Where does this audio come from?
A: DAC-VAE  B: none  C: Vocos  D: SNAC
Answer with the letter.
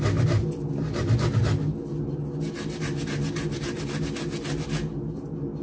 B